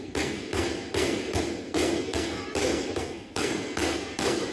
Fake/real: fake